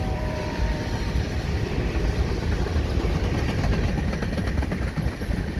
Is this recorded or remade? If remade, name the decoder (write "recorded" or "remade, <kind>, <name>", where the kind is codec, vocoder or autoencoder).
remade, vocoder, BigVGAN v2